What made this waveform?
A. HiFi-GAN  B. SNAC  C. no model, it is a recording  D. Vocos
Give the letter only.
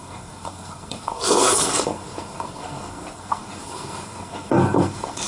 B